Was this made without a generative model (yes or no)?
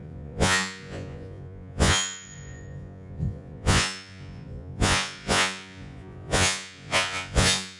no